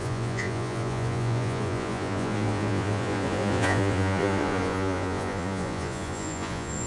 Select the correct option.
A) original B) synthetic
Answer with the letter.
B